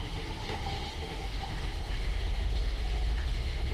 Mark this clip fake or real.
fake